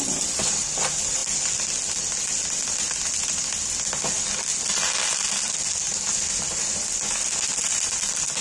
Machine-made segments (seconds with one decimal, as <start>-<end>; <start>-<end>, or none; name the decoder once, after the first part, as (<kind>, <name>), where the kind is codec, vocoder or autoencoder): none